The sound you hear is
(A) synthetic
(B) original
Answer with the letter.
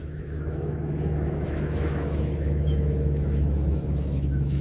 A